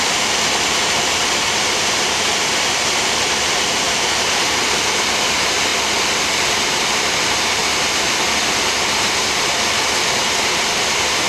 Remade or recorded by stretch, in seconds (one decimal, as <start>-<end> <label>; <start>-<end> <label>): 0.0-5.7 remade; 5.7-6.5 recorded; 6.5-7.6 remade; 7.6-10.0 recorded; 10.0-11.3 remade